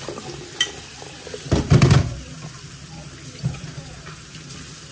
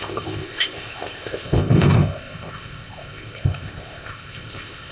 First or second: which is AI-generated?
second